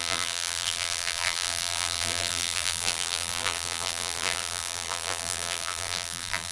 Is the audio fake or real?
fake